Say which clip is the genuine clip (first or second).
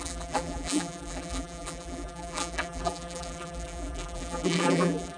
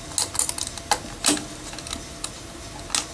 second